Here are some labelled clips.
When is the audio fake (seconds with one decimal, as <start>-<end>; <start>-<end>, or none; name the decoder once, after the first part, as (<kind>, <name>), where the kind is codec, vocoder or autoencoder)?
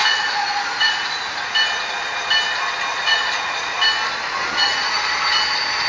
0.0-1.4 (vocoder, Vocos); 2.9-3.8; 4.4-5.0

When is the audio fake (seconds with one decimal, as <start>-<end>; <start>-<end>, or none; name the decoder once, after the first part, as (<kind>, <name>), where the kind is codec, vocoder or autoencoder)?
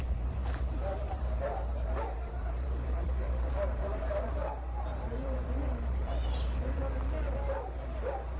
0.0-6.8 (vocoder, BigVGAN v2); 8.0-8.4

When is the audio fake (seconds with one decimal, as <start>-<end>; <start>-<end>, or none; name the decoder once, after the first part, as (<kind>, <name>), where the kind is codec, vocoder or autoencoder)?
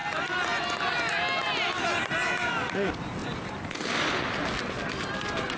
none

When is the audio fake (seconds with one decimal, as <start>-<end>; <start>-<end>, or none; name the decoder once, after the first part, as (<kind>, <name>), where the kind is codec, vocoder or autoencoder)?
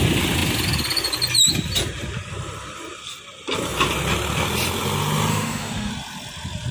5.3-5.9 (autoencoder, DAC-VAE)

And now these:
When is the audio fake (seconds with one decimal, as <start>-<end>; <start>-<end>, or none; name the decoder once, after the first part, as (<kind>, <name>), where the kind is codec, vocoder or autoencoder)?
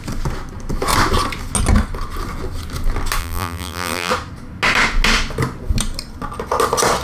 3.2-4.1 (vocoder, BigVGAN v2)